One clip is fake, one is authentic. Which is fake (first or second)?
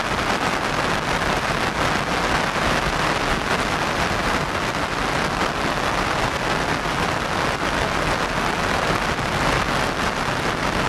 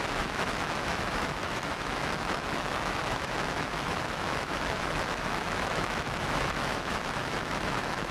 second